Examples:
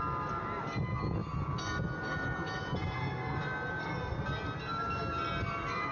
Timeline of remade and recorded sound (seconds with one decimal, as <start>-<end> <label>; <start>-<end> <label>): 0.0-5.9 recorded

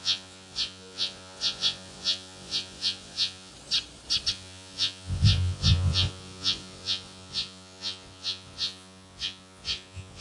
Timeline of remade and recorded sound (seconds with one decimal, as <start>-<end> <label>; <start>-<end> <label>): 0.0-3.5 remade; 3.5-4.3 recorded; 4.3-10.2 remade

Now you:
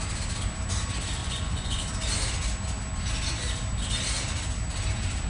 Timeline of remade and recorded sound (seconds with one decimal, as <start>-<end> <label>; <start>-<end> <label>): 0.0-1.2 recorded; 1.2-1.8 remade; 1.8-5.3 recorded

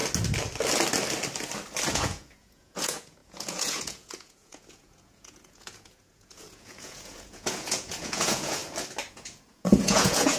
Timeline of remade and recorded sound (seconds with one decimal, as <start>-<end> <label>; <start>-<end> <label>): 0.0-1.9 recorded; 1.9-8.6 remade; 8.6-9.1 recorded; 9.1-10.4 remade

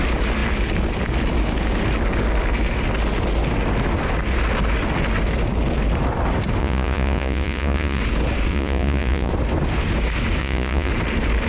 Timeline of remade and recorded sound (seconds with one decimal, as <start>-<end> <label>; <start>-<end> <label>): 0.0-6.6 recorded; 6.6-8.0 remade; 8.0-8.5 recorded; 8.5-9.3 remade; 9.3-10.4 recorded; 10.4-10.9 remade; 10.9-11.5 recorded

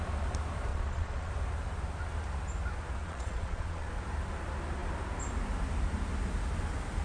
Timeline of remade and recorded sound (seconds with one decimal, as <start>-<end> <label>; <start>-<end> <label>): 0.0-0.7 recorded; 0.7-1.3 remade; 1.3-3.0 recorded; 3.0-3.9 remade; 3.9-7.0 recorded

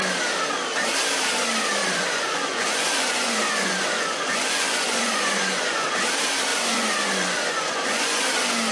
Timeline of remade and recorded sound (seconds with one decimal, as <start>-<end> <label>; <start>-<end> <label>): 0.0-1.8 recorded; 1.8-5.9 remade; 5.9-6.5 recorded; 6.5-8.2 remade; 8.2-8.7 recorded